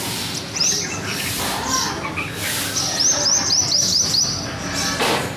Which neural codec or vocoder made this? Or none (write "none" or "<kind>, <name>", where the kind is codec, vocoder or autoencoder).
none